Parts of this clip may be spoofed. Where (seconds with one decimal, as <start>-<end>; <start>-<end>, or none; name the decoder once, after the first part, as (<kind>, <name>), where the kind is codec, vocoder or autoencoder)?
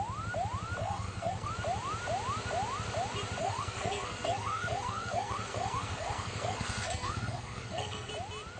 0.8-1.5 (codec, SNAC); 3.4-8.1